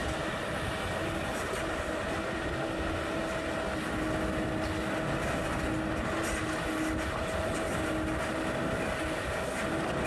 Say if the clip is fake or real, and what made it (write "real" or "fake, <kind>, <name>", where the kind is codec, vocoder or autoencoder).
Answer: real